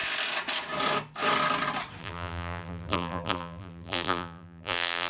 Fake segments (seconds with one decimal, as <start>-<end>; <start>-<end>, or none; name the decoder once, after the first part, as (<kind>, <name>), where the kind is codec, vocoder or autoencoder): 2.0-5.1 (vocoder, BigVGAN v2)